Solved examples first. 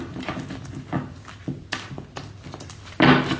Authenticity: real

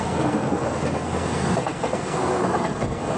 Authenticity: fake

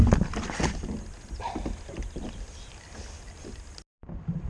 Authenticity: real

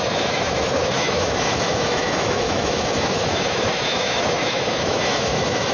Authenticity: fake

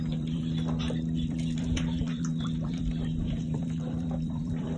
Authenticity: fake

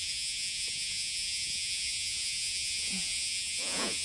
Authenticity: fake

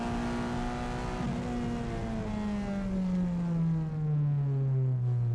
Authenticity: real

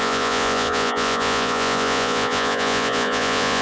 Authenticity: fake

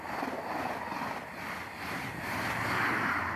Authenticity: real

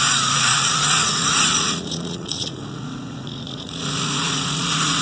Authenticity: fake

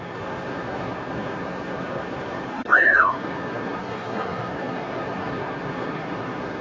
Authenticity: fake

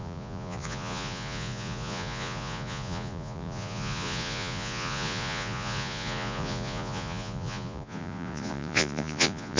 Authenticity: fake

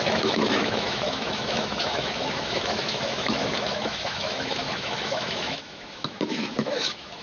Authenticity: fake